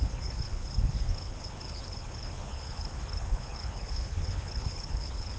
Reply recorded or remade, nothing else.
remade